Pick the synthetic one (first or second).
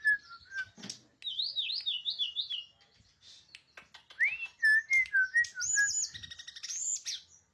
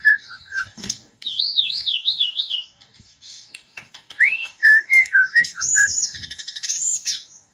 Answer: second